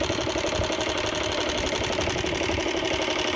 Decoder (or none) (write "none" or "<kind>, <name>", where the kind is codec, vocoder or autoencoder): none